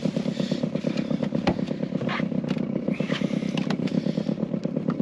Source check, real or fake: fake